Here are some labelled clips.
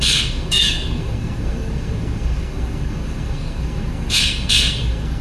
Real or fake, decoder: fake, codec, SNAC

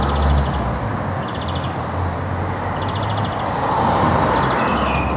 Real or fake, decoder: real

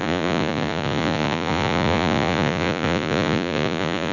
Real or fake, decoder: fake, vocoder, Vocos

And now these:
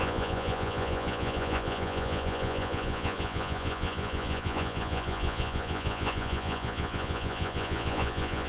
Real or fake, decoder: fake, vocoder, Vocos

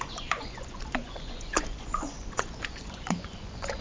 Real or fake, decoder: fake, vocoder, Vocos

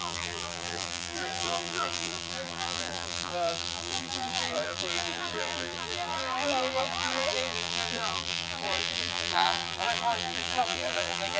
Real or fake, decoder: fake, vocoder, BigVGAN v2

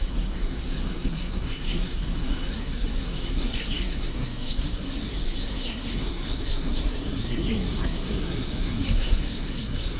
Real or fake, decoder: fake, codec, SNAC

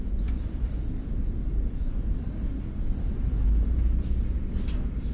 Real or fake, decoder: real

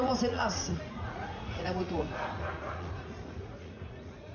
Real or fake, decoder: fake, vocoder, Vocos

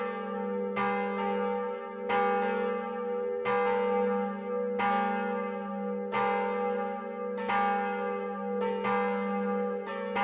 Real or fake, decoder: real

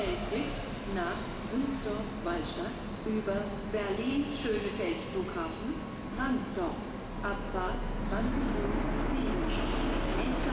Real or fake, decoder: real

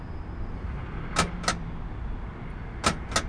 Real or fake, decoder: real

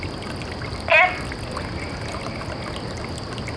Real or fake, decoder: real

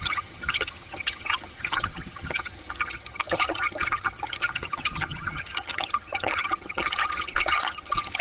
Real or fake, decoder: fake, vocoder, HiFi-GAN